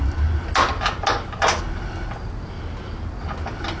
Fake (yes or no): no